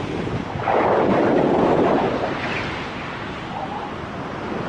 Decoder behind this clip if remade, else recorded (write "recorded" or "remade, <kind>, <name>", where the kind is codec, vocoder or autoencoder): recorded